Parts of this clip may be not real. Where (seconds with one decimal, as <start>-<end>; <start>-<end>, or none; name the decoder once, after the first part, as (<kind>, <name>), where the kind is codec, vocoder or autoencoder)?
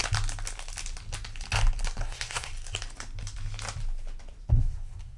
2.0-2.5 (codec, SNAC); 4.5-5.2